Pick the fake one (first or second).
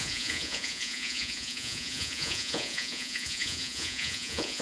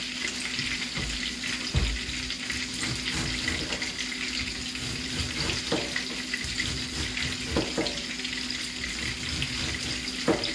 first